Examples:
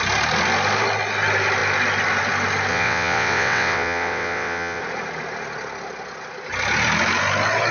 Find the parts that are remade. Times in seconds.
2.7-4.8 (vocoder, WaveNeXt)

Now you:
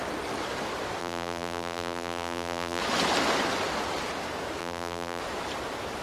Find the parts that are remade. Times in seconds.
1.0-2.8 (vocoder, BigVGAN v2); 4.6-5.2

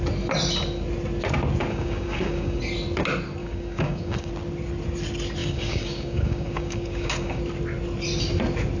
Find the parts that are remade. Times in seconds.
1.7-2.6 (codec, DAC); 3.4-4.3; 5.4-7.4

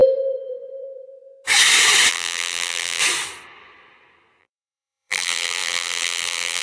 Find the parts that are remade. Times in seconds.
2.1-3.0 (vocoder, BigVGAN v2); 4.4-6.6

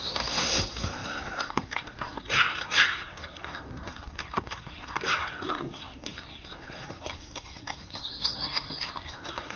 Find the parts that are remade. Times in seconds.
0.0-9.6 (codec, SNAC)

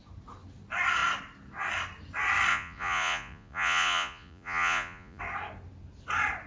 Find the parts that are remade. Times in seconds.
2.5-5.2 (vocoder, Vocos)

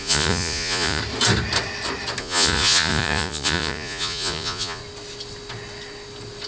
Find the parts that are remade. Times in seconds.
0.0-1.0 (vocoder, Vocos); 2.2-4.8